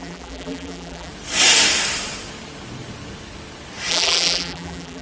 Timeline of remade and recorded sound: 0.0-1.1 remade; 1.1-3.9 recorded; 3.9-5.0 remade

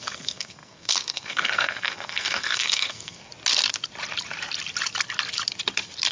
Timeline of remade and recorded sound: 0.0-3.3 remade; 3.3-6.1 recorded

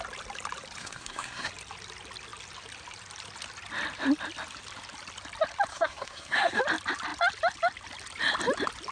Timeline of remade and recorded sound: 0.0-0.8 recorded; 0.8-1.5 remade; 1.5-5.7 recorded; 5.7-6.6 remade; 6.6-8.9 recorded

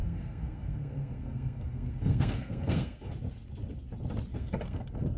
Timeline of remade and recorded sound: 0.0-3.1 remade; 3.1-4.3 recorded; 4.3-5.2 remade

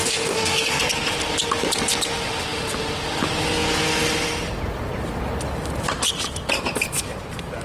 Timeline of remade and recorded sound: 0.0-0.9 remade; 0.9-7.6 recorded

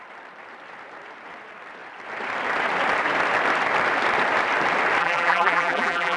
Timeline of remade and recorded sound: 0.0-5.0 recorded; 5.0-6.2 remade

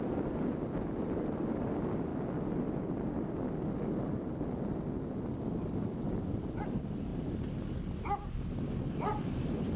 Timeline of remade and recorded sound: 0.0-2.1 remade; 2.1-5.6 recorded; 5.6-7.1 remade; 7.1-7.8 recorded; 7.8-9.8 remade

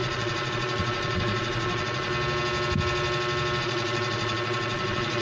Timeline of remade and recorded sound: 0.0-2.1 remade; 2.1-3.6 recorded; 3.6-5.2 remade